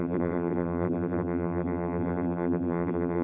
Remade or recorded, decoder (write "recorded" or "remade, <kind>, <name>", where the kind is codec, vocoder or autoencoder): remade, vocoder, BigVGAN v2